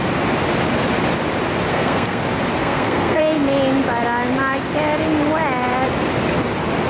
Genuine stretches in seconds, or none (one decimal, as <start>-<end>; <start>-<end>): 0.0-1.7; 2.2-2.6; 3.2-6.9